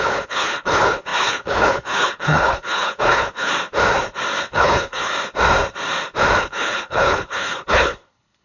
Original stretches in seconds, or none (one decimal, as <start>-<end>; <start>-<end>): 3.5-4.4; 5.1-6.4